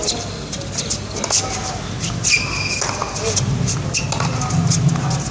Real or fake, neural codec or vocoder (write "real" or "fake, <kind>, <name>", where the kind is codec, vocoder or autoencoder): real